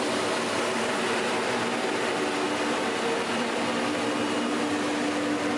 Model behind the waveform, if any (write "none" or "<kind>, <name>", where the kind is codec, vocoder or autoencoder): none